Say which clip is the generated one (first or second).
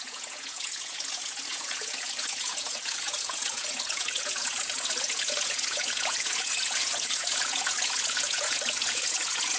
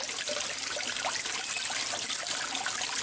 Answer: first